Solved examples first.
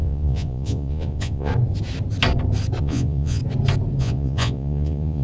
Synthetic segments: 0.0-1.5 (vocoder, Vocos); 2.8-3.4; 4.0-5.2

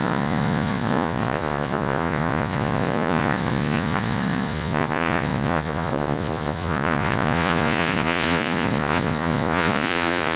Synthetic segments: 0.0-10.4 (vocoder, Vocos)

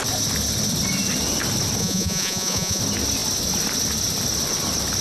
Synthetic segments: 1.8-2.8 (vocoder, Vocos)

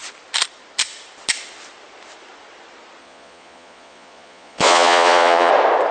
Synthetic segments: 3.0-5.5 (vocoder, Vocos)

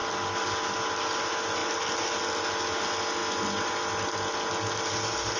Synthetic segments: none

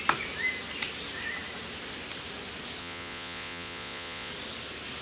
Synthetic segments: 2.8-4.3 (vocoder, Vocos)

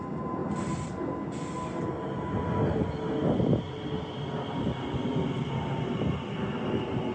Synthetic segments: none

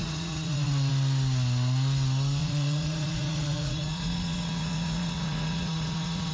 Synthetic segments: 0.0-0.9 (vocoder, Vocos); 2.4-6.3